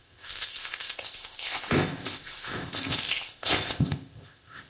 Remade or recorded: remade